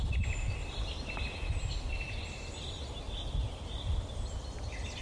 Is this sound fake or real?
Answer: real